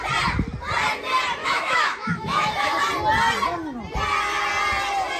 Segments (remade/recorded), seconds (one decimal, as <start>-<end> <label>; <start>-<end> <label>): 0.0-1.4 recorded; 1.4-2.9 remade; 2.9-5.2 recorded